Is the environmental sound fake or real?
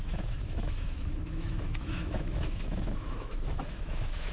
fake